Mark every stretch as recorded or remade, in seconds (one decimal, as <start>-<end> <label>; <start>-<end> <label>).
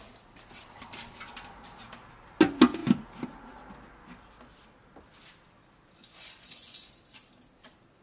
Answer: 0.0-6.0 recorded; 6.0-6.9 remade; 6.9-8.0 recorded